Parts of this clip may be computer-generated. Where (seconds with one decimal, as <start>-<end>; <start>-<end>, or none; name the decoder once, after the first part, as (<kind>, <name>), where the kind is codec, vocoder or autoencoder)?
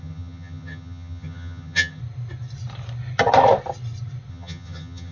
0.0-2.0 (vocoder, HiFi-GAN); 4.3-5.1